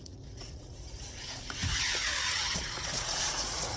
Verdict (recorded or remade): remade